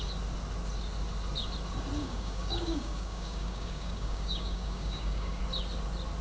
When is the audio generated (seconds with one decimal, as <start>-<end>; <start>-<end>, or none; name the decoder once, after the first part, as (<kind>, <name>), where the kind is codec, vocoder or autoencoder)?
2.0-5.4 (codec, DAC)